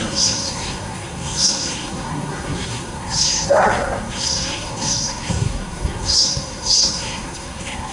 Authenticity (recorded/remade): remade